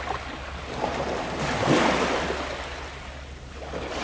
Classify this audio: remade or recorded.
recorded